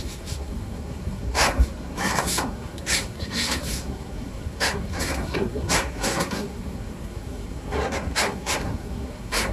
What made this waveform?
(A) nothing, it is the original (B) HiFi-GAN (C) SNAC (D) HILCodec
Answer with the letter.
C